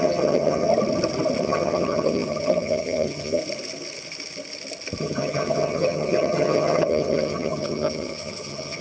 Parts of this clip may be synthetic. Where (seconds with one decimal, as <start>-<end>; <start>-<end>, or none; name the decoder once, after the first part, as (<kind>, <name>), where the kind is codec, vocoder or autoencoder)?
0.0-0.7 (vocoder, HiFi-GAN); 1.4-3.4; 5.0-8.8